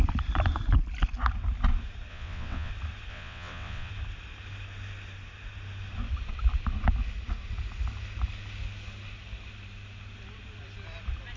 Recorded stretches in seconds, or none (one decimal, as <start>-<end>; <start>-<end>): 0.0-2.1; 2.7-3.1; 3.9-11.4